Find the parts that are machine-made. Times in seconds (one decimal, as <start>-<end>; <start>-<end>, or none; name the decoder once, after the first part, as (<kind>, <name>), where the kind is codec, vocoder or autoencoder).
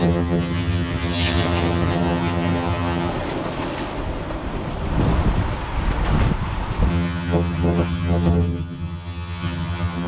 0.0-3.1 (vocoder, HiFi-GAN); 6.9-10.1